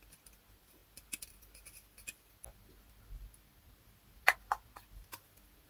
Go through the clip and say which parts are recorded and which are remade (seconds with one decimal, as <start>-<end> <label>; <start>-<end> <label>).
0.0-5.7 recorded